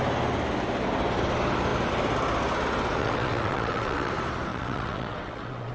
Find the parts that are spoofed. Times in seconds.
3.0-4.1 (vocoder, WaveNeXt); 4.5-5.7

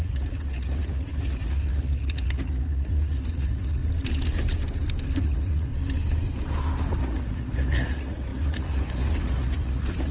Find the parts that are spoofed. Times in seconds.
0.0-3.8 (vocoder, Vocos); 5.2-5.7; 7.0-10.1

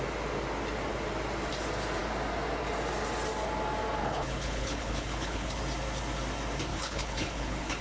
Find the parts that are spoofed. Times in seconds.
4.0-5.6 (codec, HILCodec); 6.7-7.8